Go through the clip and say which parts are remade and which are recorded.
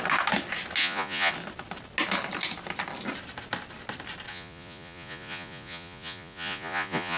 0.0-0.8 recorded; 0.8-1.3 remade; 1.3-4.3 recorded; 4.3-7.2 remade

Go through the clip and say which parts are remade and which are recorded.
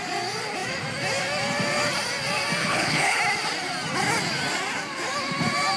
0.0-2.6 recorded; 2.6-3.2 remade; 3.2-5.8 recorded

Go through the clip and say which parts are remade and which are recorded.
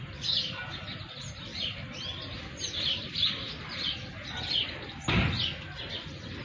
0.0-6.4 recorded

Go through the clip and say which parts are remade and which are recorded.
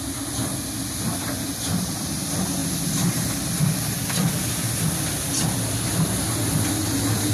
0.0-7.3 recorded